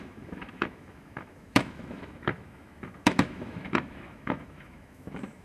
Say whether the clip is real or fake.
fake